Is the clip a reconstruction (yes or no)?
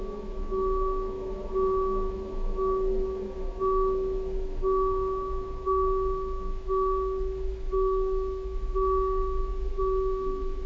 yes